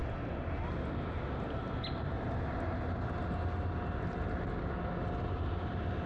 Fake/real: real